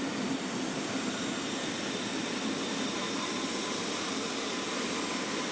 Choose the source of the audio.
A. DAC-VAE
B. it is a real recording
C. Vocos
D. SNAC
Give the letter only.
B